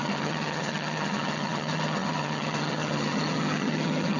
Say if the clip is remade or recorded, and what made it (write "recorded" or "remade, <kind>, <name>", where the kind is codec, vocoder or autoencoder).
remade, vocoder, HiFi-GAN